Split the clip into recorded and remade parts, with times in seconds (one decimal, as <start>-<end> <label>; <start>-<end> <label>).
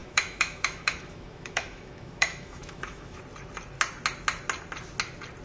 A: 0.0-3.2 remade; 3.2-5.4 recorded